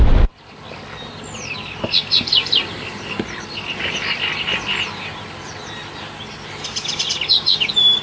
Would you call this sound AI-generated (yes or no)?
no